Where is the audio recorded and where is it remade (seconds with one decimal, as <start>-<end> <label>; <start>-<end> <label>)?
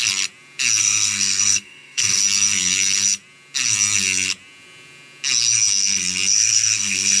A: 0.0-0.8 recorded; 0.8-2.2 remade; 2.2-6.3 recorded; 6.3-7.2 remade